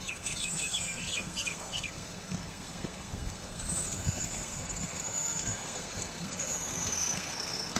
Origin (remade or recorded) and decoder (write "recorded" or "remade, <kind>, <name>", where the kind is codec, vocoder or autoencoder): remade, codec, SNAC